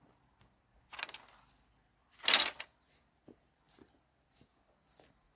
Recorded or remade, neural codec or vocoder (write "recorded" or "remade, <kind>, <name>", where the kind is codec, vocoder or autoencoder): recorded